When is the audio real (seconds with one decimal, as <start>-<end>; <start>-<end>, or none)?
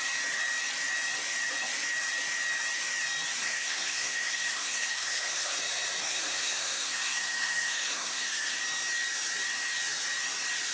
0.0-3.4; 5.6-6.0; 8.6-10.7